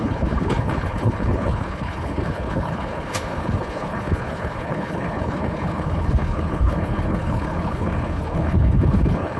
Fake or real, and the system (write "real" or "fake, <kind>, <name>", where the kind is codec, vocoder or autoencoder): fake, codec, HILCodec